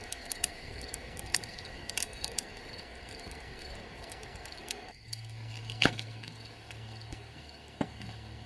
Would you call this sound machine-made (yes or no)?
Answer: yes